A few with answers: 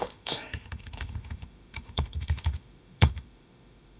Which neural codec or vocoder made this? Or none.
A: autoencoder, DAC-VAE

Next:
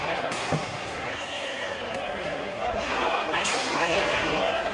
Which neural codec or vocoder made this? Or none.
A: codec, SNAC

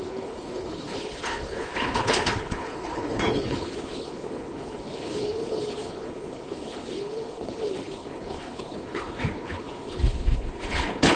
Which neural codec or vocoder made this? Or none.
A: codec, HILCodec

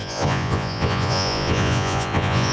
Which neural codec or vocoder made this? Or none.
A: vocoder, Vocos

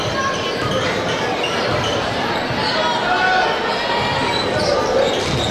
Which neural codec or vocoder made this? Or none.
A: none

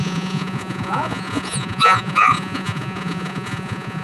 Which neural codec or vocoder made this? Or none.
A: vocoder, Vocos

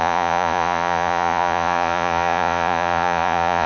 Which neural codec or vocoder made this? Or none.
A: vocoder, Vocos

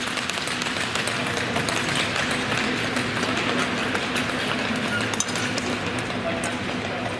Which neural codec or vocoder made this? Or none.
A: none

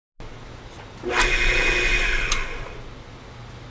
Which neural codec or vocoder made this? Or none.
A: none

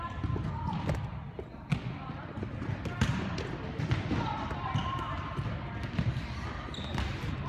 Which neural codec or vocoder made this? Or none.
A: none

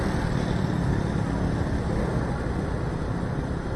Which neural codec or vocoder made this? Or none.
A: none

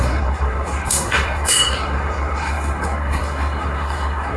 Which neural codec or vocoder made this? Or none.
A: codec, SNAC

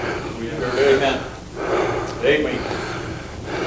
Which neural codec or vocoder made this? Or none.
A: none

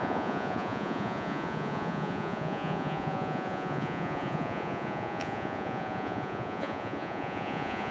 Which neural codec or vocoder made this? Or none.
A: vocoder, Vocos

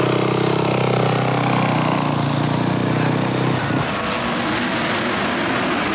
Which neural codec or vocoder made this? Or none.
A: none